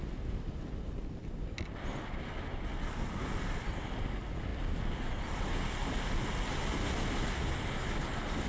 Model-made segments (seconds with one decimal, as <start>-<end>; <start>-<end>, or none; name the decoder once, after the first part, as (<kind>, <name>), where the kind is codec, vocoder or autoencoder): none